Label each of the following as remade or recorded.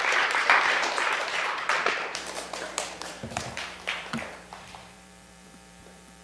remade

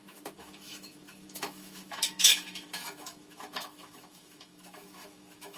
remade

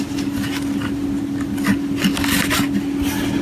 recorded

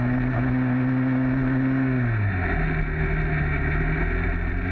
recorded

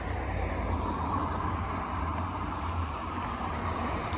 remade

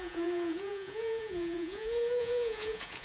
remade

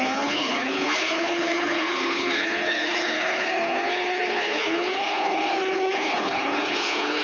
remade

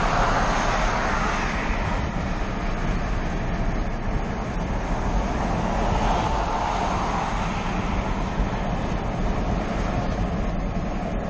recorded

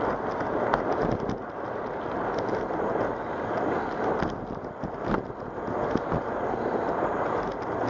recorded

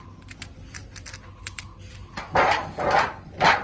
recorded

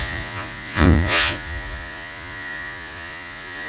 remade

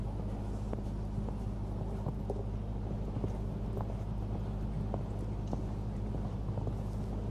recorded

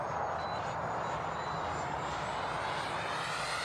recorded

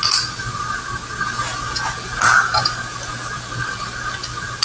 recorded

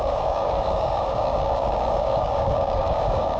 remade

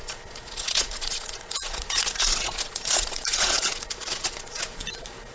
remade